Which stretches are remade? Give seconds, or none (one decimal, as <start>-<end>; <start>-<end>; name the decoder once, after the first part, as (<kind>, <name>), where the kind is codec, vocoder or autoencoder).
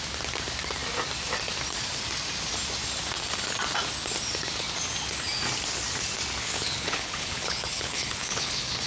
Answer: 6.4-8.9 (codec, HILCodec)